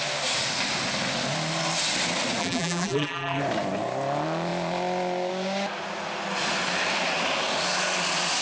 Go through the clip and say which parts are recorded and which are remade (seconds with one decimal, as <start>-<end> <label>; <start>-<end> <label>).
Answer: 0.0-2.4 recorded; 2.4-3.4 remade; 3.4-8.4 recorded